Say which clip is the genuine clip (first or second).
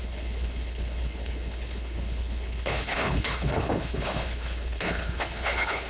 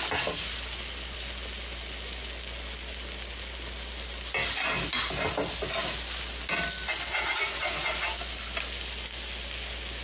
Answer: second